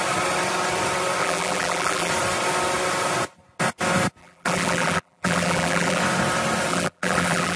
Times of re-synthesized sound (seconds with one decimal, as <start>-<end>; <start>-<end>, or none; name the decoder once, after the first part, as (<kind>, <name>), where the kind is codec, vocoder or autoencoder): 1.2-2.1 (vocoder, BigVGAN v2); 4.2-6.0; 6.7-7.6